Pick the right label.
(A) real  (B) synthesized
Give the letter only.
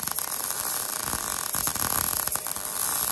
A